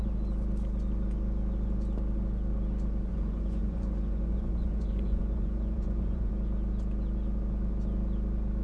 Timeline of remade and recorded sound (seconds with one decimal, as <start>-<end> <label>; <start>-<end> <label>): 0.0-3.1 recorded; 3.1-6.3 remade; 6.3-8.6 recorded